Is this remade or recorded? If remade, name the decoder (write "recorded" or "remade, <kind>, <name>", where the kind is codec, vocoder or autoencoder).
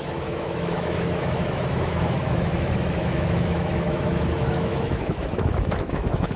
remade, autoencoder, DAC-VAE